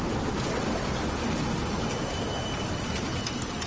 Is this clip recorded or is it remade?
recorded